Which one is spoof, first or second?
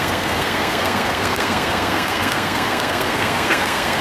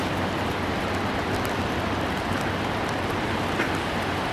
first